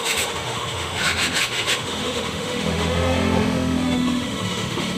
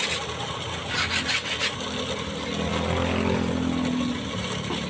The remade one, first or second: first